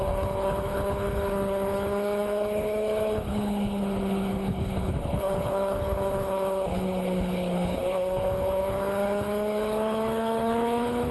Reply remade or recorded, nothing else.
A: remade